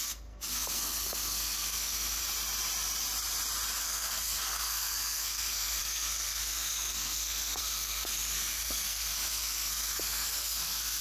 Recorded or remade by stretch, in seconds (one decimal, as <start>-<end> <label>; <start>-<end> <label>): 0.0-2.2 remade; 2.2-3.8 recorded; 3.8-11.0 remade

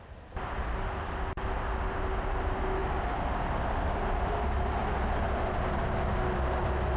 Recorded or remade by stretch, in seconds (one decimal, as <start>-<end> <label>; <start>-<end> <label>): 0.0-7.0 recorded

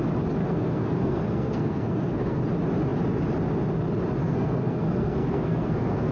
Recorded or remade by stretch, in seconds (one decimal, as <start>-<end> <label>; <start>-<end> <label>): 0.0-0.4 recorded; 0.4-2.4 remade; 2.4-4.2 recorded; 4.2-6.1 remade